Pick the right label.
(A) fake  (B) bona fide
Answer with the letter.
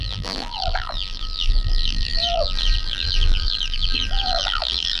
A